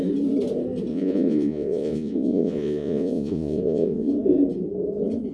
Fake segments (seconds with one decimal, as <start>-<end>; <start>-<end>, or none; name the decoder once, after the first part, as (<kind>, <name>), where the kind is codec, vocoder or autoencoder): 0.9-4.1 (vocoder, Vocos)